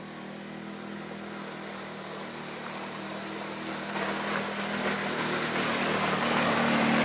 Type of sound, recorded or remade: recorded